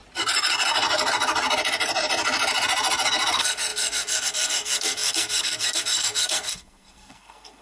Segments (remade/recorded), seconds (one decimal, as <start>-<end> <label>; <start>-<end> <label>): 0.0-3.3 recorded; 3.3-7.6 remade